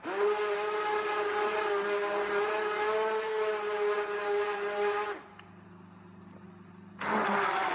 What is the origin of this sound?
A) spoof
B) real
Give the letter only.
B